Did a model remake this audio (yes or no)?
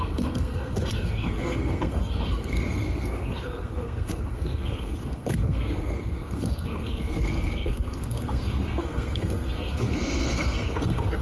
yes